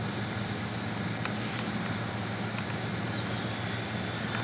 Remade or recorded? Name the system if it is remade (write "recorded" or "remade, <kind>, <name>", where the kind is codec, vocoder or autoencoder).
recorded